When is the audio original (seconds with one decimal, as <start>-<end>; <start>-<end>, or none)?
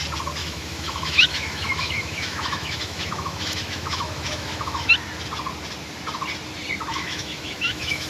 0.0-0.4; 4.9-6.9